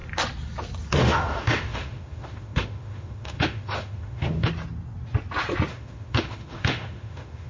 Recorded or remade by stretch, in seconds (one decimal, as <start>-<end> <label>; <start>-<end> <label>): 0.0-1.0 recorded; 1.0-4.5 remade; 4.5-5.7 recorded; 5.7-7.5 remade